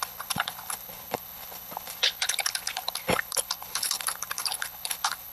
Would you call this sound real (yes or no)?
no